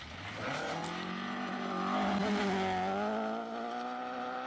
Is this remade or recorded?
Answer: recorded